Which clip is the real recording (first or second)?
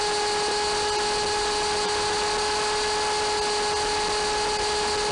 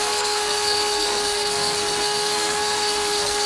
first